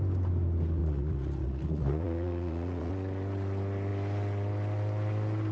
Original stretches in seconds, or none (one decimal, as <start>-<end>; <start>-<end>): 0.0-0.8; 2.9-5.5